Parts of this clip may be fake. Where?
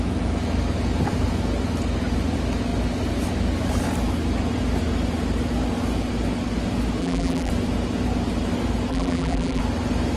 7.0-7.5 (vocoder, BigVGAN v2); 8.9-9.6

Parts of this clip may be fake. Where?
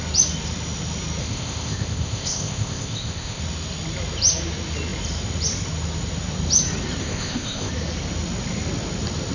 1.2-3.4 (codec, ZipCodec); 7.0-7.7